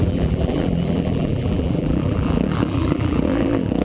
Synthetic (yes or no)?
yes